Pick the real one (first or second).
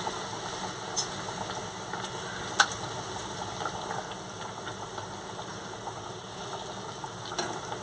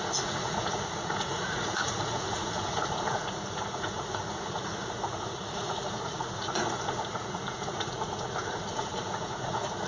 first